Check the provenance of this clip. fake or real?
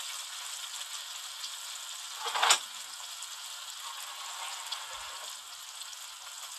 real